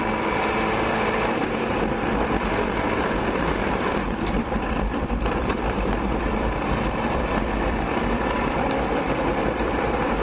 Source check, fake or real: fake